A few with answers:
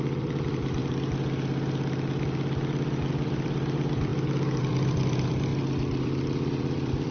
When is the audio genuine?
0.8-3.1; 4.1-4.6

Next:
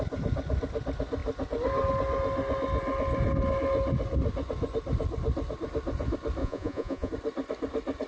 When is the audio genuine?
0.0-6.4; 7.1-8.1

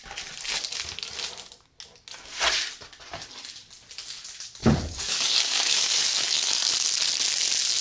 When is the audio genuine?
0.0-4.6; 6.7-7.8

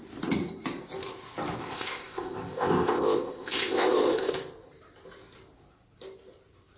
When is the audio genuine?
0.0-1.6; 4.3-6.8

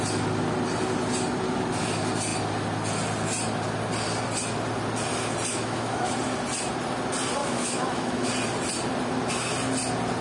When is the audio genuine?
0.0-5.5; 6.1-7.4; 8.3-10.2